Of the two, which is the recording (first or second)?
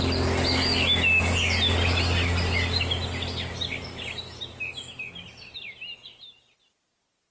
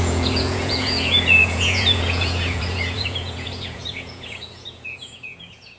first